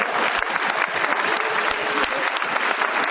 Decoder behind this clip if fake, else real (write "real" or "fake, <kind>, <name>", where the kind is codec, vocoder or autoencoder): real